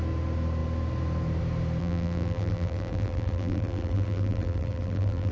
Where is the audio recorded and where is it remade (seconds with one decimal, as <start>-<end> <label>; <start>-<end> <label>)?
0.0-1.8 recorded; 1.8-5.3 remade